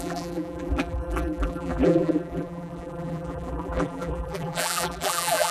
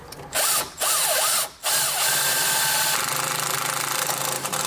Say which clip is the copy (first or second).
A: first